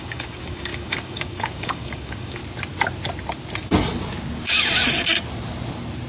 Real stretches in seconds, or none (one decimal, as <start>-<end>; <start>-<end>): 2.4-6.1